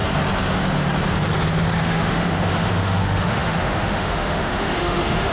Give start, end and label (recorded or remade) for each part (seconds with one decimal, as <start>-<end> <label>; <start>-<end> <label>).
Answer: 0.0-1.8 recorded; 1.8-5.3 remade